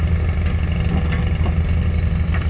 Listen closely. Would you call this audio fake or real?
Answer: real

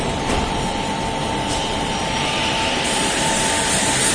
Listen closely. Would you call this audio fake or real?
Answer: fake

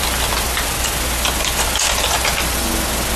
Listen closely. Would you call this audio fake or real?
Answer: real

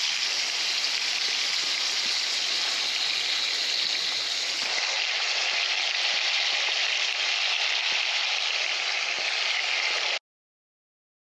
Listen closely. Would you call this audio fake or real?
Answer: real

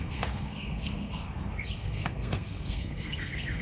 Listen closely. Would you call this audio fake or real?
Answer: fake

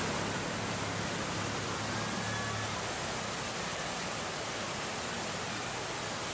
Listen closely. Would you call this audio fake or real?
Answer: real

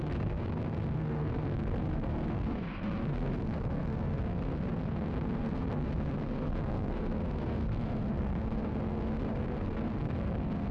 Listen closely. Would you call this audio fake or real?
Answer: fake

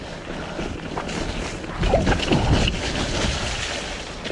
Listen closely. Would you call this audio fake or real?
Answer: real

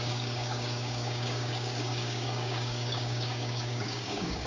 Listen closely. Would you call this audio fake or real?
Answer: fake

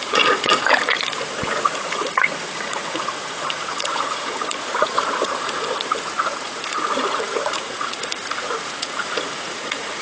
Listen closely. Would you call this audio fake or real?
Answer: fake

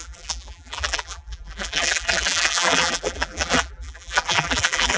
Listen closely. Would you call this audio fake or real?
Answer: fake